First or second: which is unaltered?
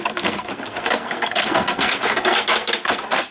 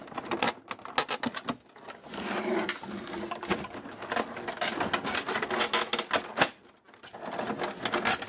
second